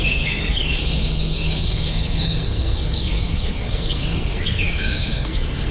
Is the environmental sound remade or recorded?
remade